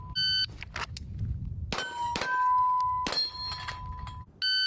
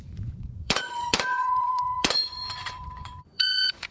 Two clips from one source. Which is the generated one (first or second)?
second